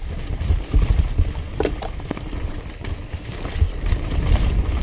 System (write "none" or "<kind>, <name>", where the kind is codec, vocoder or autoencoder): vocoder, BigVGAN v2